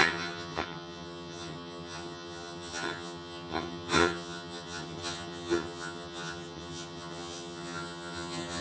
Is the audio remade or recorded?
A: remade